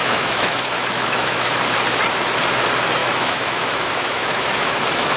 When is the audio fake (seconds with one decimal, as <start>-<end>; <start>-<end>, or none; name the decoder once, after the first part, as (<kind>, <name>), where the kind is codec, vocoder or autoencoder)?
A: 0.0-1.6 (autoencoder, DAC-VAE); 3.0-4.8